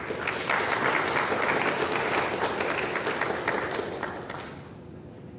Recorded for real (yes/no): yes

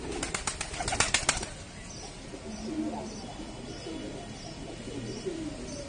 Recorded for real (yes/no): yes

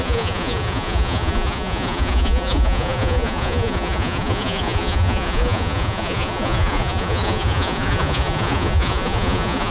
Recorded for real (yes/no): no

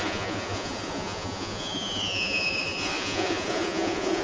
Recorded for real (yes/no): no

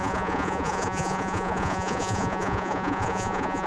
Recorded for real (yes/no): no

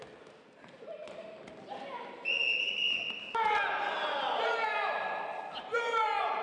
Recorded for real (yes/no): yes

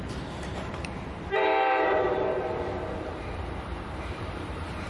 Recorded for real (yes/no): no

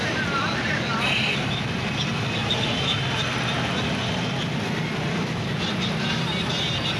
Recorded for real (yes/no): no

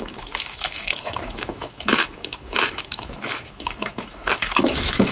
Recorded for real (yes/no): no